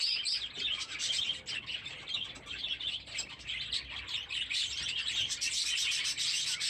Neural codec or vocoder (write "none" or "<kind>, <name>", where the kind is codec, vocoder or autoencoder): none